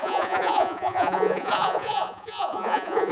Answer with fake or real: fake